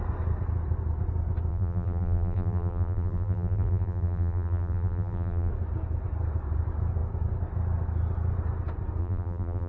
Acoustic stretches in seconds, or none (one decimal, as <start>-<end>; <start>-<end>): 0.0-1.5; 5.5-9.0